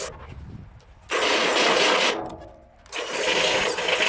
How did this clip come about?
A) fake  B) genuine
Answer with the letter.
B